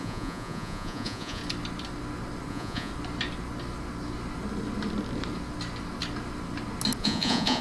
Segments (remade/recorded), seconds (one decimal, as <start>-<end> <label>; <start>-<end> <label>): 0.0-1.4 remade; 1.4-2.5 recorded; 2.5-2.9 remade; 2.9-7.0 recorded; 7.0-7.6 remade